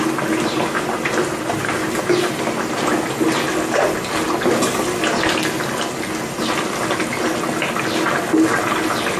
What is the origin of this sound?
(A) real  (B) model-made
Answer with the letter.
A